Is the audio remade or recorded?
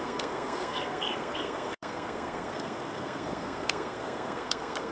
remade